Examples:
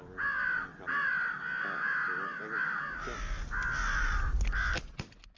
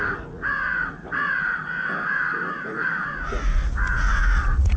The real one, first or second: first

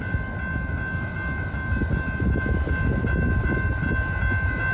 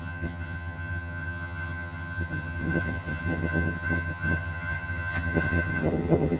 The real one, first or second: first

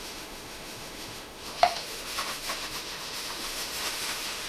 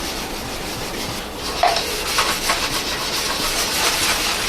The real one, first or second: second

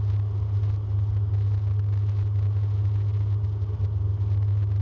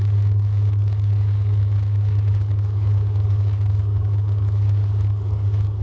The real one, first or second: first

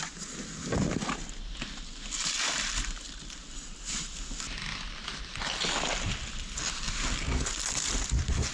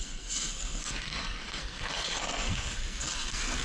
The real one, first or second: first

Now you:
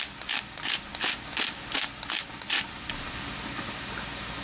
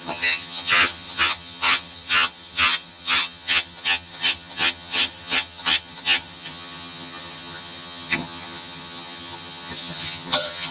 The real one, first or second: first